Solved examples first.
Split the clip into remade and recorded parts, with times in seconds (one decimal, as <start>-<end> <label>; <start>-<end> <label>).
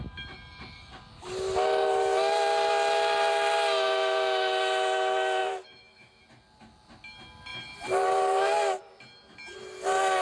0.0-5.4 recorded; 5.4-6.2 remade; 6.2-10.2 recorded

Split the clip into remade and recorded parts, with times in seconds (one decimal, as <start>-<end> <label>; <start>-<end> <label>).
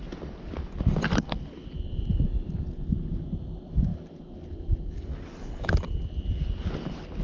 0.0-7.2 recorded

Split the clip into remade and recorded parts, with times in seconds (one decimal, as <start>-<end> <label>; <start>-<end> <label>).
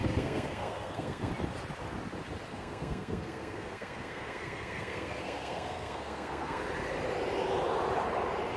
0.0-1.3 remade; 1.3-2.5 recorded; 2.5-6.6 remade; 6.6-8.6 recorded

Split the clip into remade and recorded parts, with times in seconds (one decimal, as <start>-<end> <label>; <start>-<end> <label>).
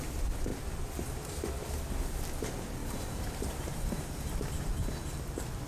0.0-2.8 recorded; 2.8-4.7 remade; 4.7-5.7 recorded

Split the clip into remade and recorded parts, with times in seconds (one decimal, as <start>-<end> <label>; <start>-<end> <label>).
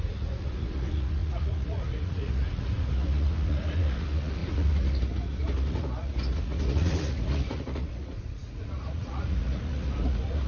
0.0-10.5 remade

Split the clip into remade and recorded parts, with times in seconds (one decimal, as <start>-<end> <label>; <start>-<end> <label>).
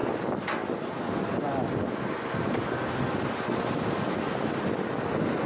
0.0-5.5 recorded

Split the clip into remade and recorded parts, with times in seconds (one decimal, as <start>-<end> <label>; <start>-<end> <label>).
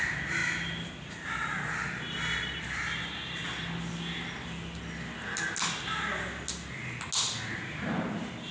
0.0-8.5 recorded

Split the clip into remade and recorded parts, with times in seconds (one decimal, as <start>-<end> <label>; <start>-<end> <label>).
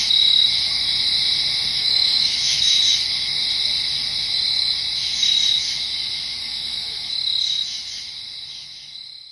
0.0-1.7 recorded; 1.7-2.8 remade; 2.8-6.4 recorded; 6.4-7.1 remade; 7.1-9.3 recorded